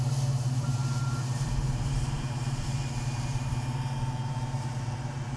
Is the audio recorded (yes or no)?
no